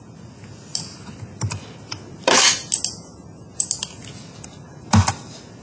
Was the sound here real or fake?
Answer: real